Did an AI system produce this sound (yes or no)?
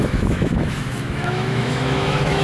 yes